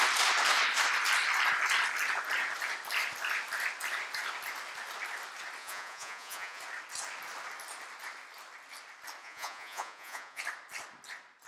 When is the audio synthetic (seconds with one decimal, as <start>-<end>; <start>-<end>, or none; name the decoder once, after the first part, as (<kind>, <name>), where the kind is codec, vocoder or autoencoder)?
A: 5.6-6.6 (vocoder, Vocos); 9.2-10.4